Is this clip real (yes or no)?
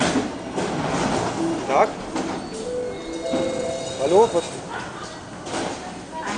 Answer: yes